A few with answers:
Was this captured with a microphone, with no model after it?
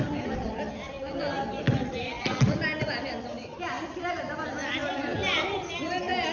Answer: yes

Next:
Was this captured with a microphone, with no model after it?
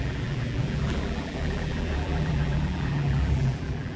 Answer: no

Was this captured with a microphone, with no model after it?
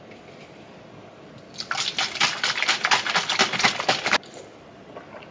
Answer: yes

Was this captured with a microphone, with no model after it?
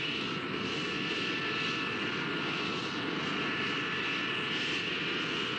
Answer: yes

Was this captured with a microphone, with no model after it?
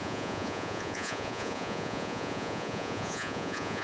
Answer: no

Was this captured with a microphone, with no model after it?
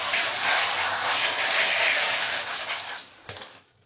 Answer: yes